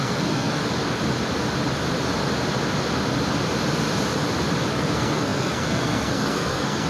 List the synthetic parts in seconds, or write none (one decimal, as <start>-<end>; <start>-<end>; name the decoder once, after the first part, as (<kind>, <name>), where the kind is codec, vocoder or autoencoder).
0.0-0.6 (codec, SNAC); 4.7-6.9